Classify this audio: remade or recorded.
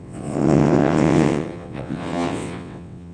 remade